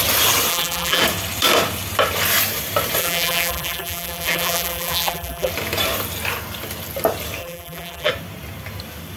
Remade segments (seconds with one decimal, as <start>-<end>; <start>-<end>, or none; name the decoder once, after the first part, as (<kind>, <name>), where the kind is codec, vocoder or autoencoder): 0.5-1.0 (vocoder, BigVGAN v2); 3.0-5.5; 7.4-8.1